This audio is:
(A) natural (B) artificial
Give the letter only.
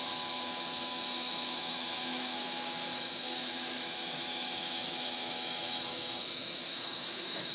B